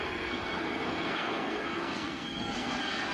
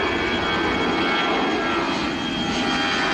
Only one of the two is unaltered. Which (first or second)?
second